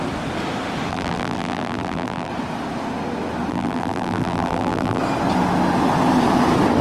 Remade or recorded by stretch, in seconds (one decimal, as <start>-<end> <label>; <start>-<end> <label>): 0.0-0.9 recorded; 0.9-2.3 remade; 2.3-3.5 recorded; 3.5-5.0 remade; 5.0-6.8 recorded